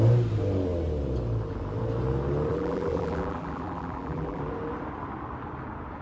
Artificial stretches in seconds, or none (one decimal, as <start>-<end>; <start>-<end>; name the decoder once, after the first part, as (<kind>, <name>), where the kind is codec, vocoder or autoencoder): 2.5-4.4 (vocoder, BigVGAN v2)